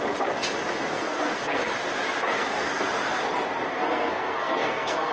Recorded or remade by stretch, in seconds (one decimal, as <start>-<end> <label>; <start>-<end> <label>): 0.0-0.9 recorded; 0.9-1.7 remade; 1.7-2.3 recorded; 2.3-2.8 remade; 2.8-3.7 recorded; 3.7-5.1 remade